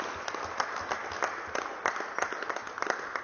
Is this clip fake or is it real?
real